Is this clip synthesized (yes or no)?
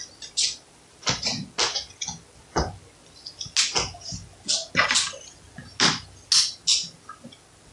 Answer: no